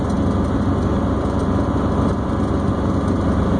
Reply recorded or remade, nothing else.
recorded